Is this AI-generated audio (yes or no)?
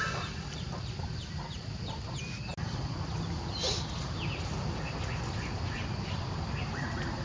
no